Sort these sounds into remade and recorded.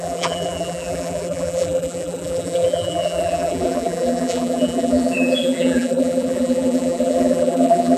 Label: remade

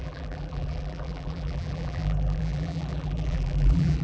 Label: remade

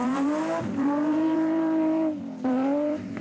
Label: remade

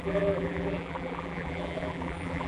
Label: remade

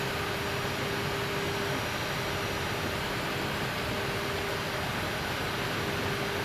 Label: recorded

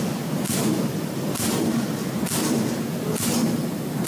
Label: recorded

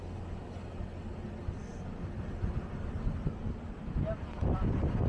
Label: recorded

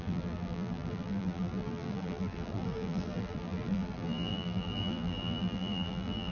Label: remade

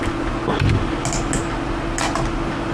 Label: recorded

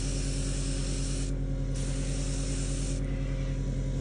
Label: recorded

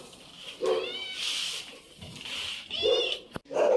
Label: recorded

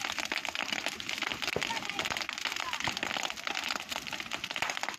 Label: recorded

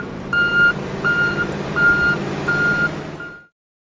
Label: remade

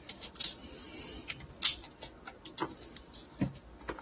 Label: recorded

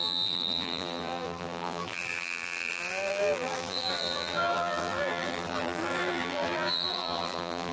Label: remade